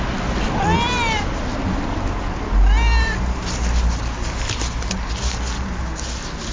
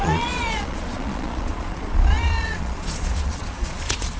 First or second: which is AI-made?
second